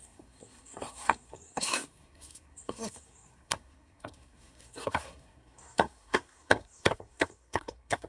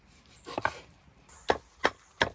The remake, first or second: first